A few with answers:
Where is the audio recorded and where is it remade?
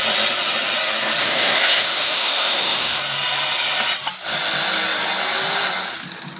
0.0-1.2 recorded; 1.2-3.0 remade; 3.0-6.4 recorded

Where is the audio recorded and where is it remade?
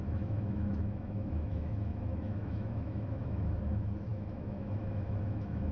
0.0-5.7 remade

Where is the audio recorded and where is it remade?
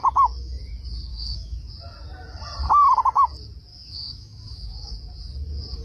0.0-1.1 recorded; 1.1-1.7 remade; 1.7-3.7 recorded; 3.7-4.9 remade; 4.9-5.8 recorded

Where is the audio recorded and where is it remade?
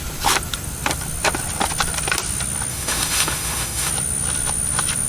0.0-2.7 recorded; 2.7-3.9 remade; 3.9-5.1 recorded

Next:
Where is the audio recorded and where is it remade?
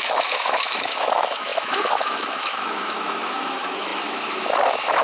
0.0-5.0 remade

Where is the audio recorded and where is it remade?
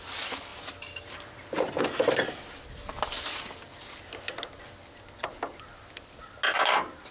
0.0-7.1 recorded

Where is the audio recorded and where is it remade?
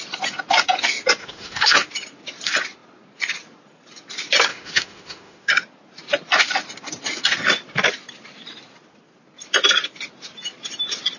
0.0-1.2 recorded; 1.2-1.9 remade; 1.9-4.5 recorded; 4.5-5.5 remade; 5.5-11.2 recorded